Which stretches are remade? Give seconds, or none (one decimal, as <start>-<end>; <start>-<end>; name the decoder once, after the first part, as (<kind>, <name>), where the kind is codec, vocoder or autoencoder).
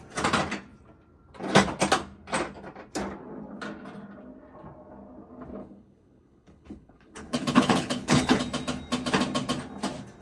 5.6-8.4 (codec, HILCodec)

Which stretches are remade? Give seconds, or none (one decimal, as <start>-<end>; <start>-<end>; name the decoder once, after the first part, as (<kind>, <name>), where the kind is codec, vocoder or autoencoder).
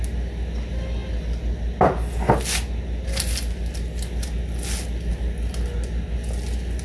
none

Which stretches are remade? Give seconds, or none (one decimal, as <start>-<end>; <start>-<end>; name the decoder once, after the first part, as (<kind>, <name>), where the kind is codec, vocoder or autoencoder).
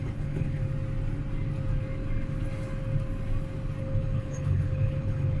0.0-0.6 (codec, HILCodec); 3.8-5.4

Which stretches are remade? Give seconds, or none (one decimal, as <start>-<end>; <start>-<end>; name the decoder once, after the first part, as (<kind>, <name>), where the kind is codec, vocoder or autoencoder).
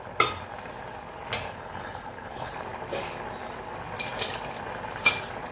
1.5-2.5 (codec, HILCodec)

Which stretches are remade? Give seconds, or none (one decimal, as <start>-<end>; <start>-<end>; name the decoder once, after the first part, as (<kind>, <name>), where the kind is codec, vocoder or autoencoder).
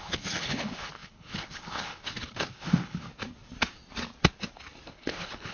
0.0-3.1 (codec, HILCodec); 4.9-5.5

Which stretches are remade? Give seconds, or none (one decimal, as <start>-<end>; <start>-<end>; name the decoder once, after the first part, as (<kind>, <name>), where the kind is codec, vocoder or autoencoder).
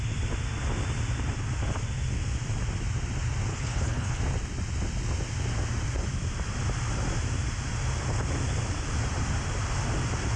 3.5-4.2 (codec, HILCodec)